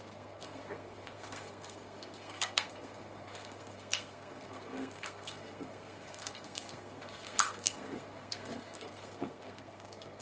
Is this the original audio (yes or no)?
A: no